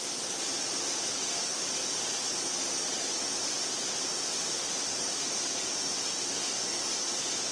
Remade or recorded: recorded